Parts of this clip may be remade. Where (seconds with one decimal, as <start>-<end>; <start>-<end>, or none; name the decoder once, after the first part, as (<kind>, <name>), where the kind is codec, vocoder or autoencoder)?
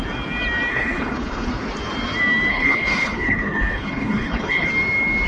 0.7-1.5 (codec, HILCodec); 2.5-4.7